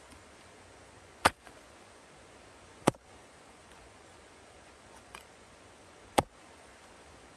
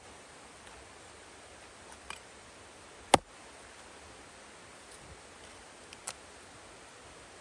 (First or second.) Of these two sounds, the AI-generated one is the first